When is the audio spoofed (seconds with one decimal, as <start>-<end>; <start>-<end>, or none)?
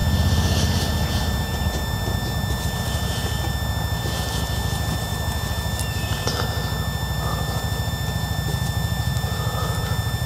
none